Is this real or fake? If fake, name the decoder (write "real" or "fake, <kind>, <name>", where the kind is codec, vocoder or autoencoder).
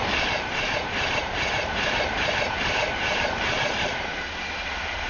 fake, vocoder, BigVGAN v2